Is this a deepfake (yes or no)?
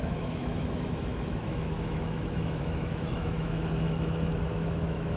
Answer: yes